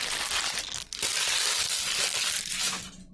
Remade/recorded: recorded